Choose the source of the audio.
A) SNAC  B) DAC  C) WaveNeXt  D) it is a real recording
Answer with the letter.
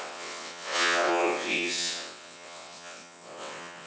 C